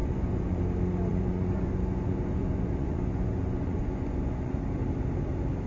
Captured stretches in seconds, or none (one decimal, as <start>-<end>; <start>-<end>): 0.6-1.1; 4.5-5.7